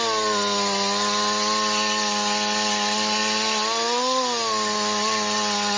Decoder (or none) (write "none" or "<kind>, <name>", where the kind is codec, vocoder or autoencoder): none